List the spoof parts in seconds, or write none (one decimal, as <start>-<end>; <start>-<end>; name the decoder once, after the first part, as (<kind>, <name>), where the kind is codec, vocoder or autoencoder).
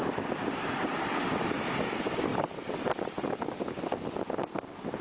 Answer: none